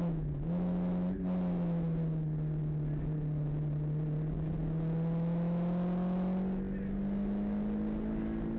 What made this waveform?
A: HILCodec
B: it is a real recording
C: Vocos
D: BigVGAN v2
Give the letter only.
B